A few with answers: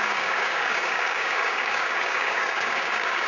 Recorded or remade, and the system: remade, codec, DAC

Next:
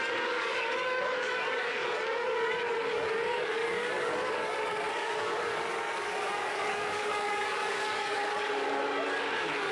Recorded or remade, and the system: remade, codec, DAC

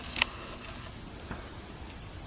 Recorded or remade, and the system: recorded